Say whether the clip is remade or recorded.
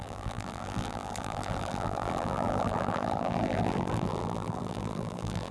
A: remade